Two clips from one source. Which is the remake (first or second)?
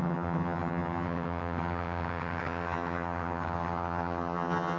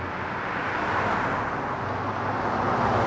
first